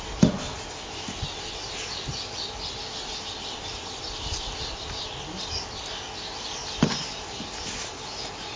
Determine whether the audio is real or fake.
real